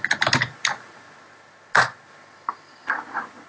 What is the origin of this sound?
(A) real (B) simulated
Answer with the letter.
A